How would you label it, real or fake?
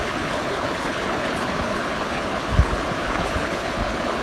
fake